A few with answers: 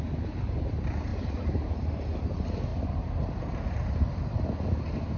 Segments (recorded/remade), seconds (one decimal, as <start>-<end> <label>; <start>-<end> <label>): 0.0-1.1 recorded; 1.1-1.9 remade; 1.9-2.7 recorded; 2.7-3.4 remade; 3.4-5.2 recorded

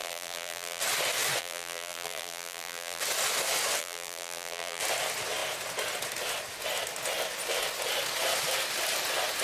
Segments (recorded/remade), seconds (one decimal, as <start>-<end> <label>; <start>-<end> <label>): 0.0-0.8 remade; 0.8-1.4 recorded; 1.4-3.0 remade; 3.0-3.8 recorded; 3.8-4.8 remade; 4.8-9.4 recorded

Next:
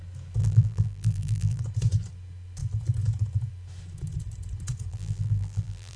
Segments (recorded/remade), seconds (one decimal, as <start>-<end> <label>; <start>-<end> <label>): 0.0-0.4 recorded; 0.4-1.6 remade; 1.6-4.9 recorded; 4.9-6.0 remade

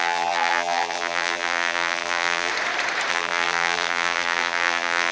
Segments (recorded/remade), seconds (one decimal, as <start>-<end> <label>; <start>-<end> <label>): 0.0-2.5 remade; 2.5-3.1 recorded; 3.1-5.1 remade